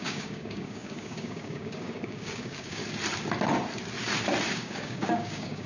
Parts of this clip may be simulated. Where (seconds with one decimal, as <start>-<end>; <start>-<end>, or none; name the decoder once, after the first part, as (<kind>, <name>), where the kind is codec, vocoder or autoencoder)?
0.0-2.8 (codec, DAC); 4.5-5.7